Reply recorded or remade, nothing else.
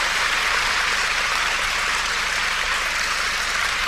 remade